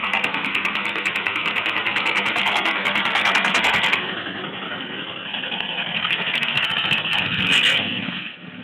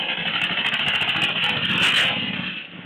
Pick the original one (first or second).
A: second